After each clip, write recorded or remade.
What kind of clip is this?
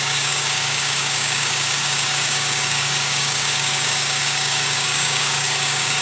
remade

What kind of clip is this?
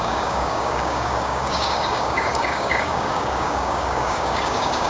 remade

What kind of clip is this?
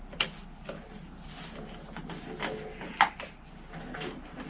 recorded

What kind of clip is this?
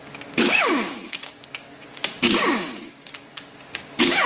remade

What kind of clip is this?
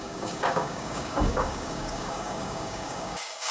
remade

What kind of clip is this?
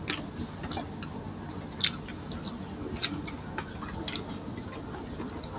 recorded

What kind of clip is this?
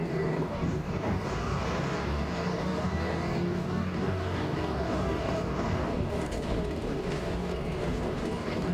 remade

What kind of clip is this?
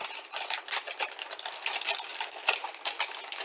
recorded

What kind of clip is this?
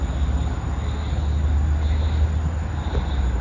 recorded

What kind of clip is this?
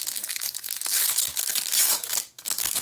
remade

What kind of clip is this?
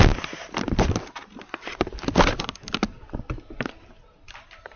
recorded